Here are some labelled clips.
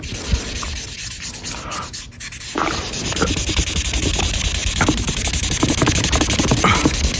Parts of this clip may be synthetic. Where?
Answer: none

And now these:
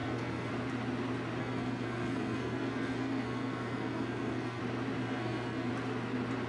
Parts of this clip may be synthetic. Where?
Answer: 0.0-0.5 (codec, SNAC); 1.4-4.6; 5.0-5.7

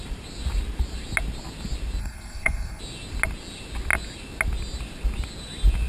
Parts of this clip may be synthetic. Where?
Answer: 2.0-2.8 (codec, SNAC)

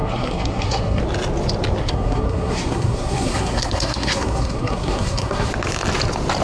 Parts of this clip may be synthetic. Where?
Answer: 0.0-1.0 (codec, SNAC); 1.8-5.5

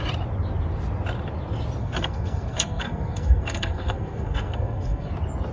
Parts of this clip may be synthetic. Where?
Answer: 1.8-5.1 (codec, SNAC)

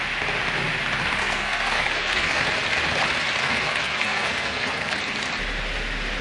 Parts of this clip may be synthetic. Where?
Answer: 1.2-2.4 (codec, SNAC); 3.4-5.0

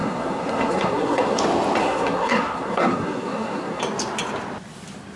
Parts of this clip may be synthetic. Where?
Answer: 0.0-1.4 (codec, SNAC); 1.8-3.8